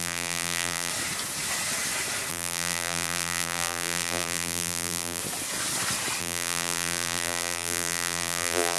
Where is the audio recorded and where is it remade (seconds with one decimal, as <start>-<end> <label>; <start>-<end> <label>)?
0.0-0.9 remade; 0.9-2.3 recorded; 2.3-5.2 remade; 5.2-6.2 recorded; 6.2-8.8 remade

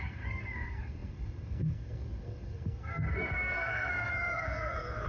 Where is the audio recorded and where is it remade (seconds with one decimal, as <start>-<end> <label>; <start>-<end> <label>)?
0.0-5.1 remade